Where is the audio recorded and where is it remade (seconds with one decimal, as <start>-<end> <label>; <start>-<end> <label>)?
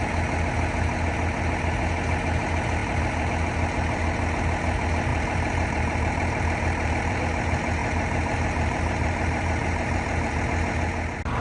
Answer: 0.0-2.8 recorded; 2.8-3.3 remade; 3.3-5.1 recorded; 5.1-7.2 remade; 7.2-7.8 recorded; 7.8-10.4 remade; 10.4-11.4 recorded